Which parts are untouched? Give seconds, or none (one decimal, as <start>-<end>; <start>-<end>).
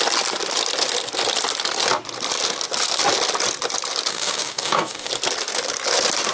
0.0-4.1; 5.1-6.3